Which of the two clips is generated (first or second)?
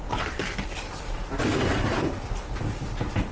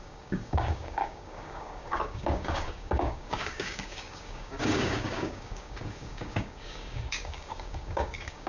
second